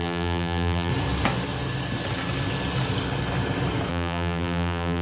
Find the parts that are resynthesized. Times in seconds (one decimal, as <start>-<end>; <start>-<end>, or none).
0.0-0.9; 3.9-5.0